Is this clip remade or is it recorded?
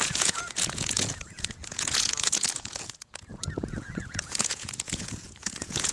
remade